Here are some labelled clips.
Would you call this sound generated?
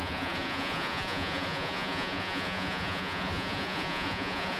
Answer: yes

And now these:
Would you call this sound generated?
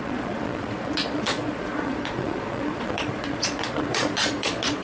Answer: yes